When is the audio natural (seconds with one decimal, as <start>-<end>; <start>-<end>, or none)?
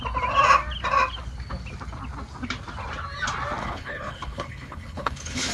0.0-3.6